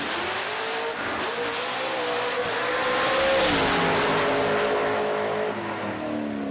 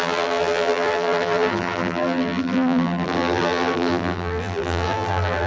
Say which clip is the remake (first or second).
second